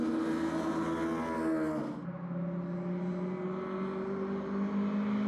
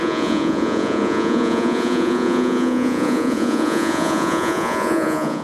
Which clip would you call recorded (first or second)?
first